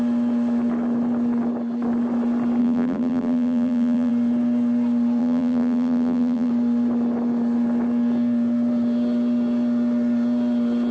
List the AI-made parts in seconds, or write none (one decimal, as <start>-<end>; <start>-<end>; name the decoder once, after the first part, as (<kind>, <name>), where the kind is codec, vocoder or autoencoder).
2.6-4.1 (vocoder, BigVGAN v2); 5.2-6.5